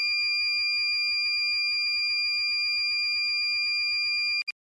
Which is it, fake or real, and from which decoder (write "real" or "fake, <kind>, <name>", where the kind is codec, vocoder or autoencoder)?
real